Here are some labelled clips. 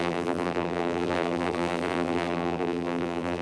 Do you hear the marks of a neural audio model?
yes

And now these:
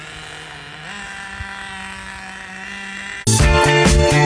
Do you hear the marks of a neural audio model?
no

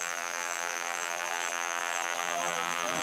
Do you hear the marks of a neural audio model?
yes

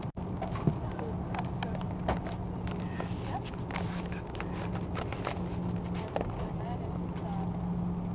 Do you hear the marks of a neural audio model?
no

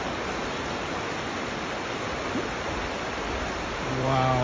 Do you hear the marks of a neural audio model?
no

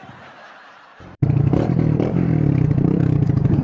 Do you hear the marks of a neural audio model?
yes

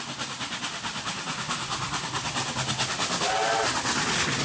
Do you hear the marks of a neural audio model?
no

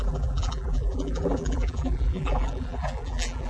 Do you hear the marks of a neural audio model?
yes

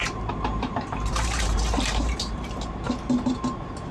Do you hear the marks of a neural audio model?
yes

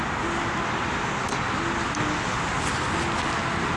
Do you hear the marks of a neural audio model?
no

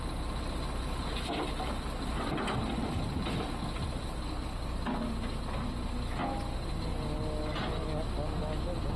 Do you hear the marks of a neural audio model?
no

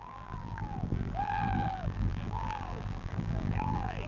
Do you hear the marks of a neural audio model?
yes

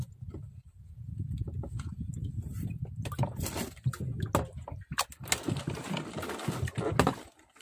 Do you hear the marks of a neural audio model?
no